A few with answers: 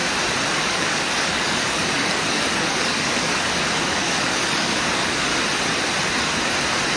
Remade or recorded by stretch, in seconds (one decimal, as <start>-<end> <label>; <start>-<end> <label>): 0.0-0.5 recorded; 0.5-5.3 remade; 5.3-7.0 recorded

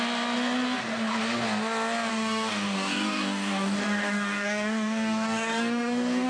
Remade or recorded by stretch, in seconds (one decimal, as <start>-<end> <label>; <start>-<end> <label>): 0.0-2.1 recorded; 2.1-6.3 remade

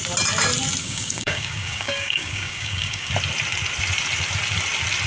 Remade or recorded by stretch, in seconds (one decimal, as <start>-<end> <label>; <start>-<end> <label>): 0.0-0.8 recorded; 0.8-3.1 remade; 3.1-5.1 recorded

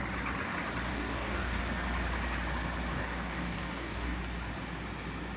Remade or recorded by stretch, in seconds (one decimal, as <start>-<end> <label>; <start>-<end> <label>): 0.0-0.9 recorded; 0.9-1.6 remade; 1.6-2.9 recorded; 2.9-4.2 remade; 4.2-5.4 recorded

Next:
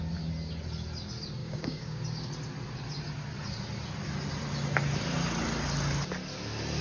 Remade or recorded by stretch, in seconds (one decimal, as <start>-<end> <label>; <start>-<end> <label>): 0.0-1.4 recorded; 1.4-2.0 remade; 2.0-6.8 recorded